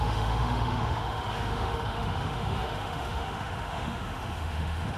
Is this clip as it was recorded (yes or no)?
no